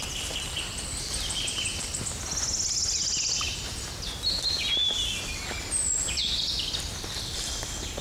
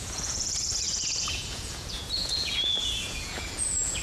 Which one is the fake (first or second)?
second